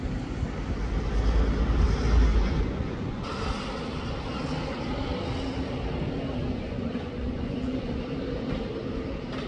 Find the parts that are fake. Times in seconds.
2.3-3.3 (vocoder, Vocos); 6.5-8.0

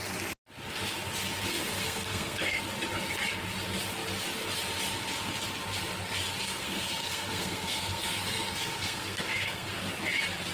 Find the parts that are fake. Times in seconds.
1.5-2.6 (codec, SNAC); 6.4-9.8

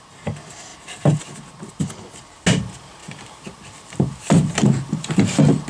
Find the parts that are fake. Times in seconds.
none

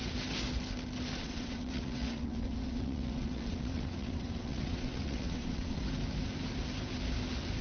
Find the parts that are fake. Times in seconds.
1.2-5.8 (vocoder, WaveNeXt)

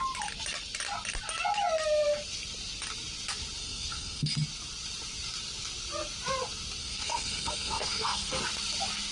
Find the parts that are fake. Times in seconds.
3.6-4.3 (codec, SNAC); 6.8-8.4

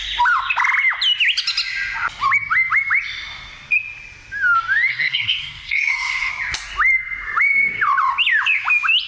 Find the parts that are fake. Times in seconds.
4.9-6.3 (codec, SNAC)

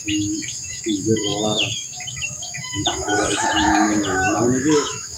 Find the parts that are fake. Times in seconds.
0.0-5.2 (autoencoder, DAC-VAE)